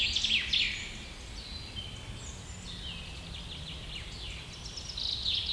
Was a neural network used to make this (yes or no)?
no